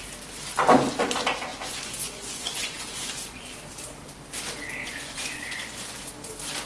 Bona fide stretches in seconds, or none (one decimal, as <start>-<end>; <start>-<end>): 0.0-1.5; 3.5-4.8; 6.0-6.7